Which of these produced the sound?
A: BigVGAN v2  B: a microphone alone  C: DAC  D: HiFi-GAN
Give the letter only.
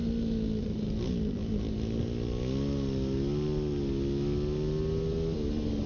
B